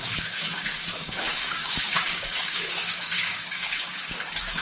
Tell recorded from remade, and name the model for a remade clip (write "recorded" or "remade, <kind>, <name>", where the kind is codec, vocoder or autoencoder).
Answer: remade, codec, DAC